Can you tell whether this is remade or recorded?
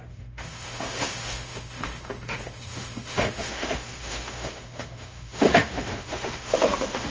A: remade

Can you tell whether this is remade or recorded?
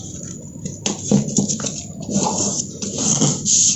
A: recorded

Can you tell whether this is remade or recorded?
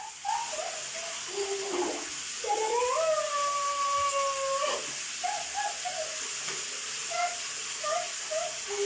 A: recorded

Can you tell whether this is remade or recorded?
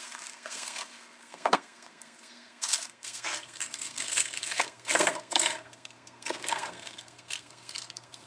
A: remade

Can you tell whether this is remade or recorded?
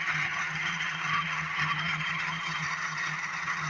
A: remade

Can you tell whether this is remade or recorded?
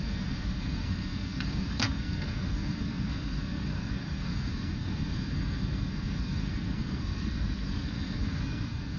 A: remade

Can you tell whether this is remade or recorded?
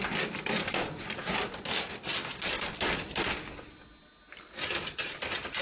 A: recorded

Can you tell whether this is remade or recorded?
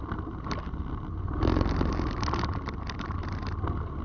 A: recorded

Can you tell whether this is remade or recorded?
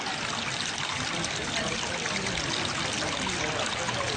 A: recorded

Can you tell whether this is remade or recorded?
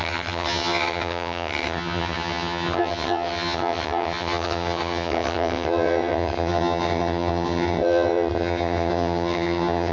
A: remade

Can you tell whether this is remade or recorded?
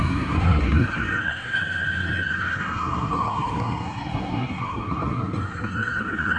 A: remade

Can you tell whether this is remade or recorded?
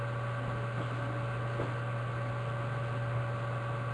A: recorded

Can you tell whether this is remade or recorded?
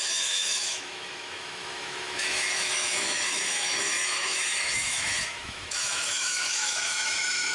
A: remade